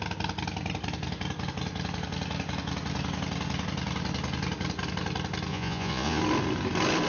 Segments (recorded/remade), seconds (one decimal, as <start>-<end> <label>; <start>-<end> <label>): 0.0-5.5 recorded; 5.5-6.2 remade; 6.2-7.1 recorded